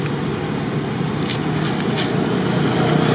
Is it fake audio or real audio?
real